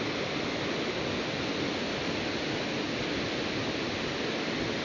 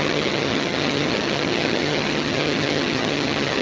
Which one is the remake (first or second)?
second